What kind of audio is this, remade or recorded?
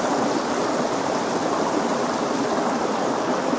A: recorded